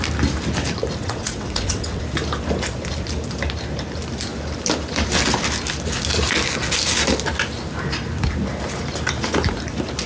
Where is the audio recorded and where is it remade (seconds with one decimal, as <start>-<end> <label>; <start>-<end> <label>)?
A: 0.0-1.0 recorded; 1.0-2.0 remade; 2.0-10.1 recorded